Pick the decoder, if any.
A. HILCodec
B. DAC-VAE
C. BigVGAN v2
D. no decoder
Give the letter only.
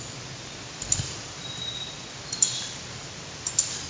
D